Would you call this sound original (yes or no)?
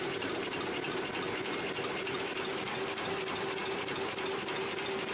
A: yes